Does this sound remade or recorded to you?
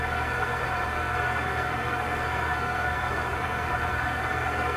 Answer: remade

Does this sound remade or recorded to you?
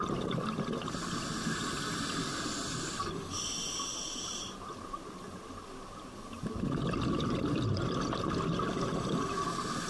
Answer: recorded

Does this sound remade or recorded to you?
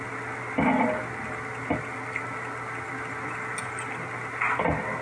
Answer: recorded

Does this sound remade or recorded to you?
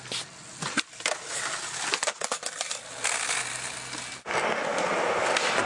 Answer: recorded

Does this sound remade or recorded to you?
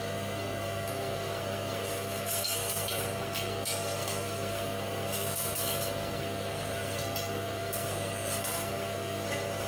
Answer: remade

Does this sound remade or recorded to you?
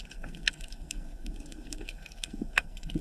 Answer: remade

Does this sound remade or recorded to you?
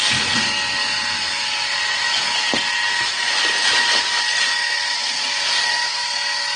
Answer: recorded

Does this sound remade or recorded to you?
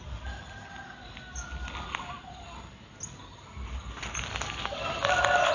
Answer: recorded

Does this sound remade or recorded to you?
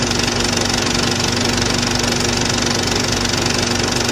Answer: recorded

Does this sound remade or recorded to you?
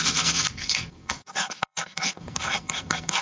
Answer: remade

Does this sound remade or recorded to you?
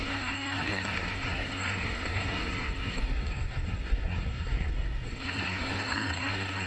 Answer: remade